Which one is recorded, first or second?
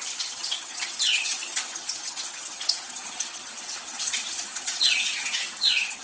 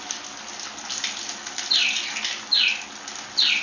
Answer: second